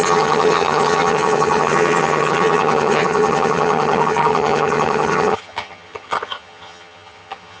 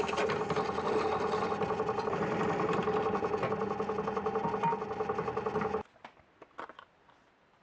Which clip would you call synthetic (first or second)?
first